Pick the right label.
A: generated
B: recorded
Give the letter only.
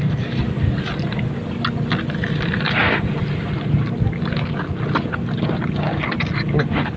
B